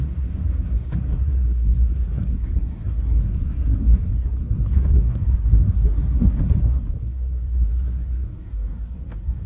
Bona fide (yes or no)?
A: no